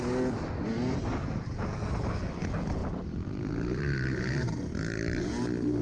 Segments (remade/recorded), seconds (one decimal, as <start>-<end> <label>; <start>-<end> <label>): 0.0-2.8 recorded; 2.8-5.3 remade; 5.3-5.8 recorded